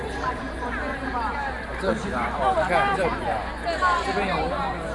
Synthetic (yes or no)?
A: yes